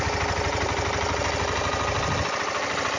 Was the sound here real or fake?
real